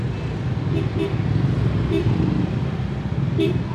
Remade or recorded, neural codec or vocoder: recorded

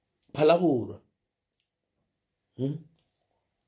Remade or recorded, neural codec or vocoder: recorded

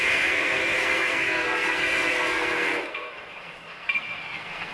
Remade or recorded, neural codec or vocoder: remade, codec, SNAC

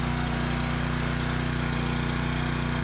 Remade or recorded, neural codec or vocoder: recorded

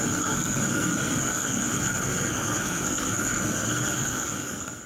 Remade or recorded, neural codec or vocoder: remade, codec, SNAC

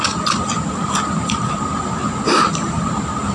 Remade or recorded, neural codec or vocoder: recorded